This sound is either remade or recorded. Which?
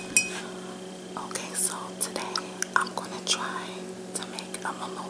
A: recorded